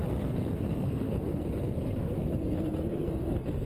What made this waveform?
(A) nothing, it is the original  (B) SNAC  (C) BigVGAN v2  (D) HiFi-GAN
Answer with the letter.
B